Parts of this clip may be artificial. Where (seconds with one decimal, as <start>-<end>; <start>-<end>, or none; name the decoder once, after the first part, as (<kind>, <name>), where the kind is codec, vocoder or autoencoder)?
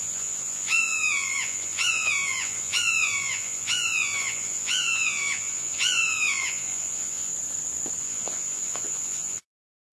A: 0.0-7.3 (vocoder, Vocos); 8.0-9.9